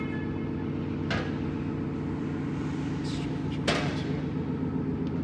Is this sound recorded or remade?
recorded